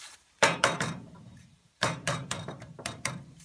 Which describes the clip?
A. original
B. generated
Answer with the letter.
B